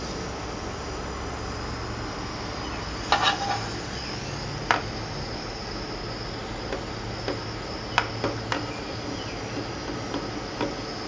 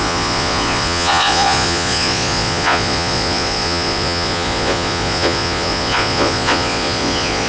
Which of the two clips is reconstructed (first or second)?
second